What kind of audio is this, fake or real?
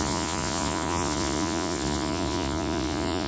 fake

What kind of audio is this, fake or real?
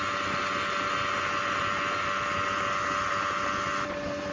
real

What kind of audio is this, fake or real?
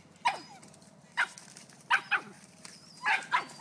real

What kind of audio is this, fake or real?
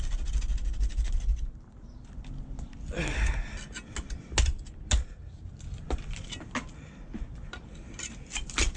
real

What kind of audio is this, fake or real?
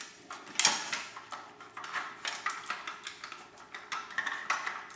real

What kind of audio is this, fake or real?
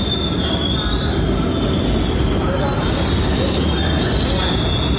real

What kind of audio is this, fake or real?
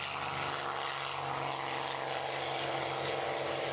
real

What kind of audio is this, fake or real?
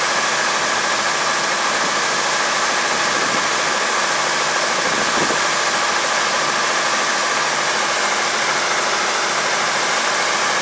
real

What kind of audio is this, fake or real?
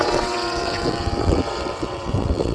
fake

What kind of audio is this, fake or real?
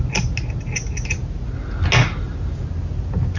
real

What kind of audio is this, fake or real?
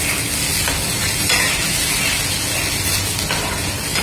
real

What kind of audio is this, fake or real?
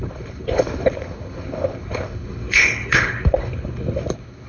fake